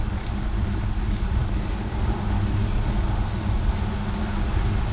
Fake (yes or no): no